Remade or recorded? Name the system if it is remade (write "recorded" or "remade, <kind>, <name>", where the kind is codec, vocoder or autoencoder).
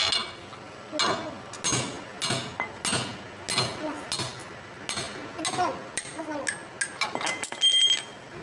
recorded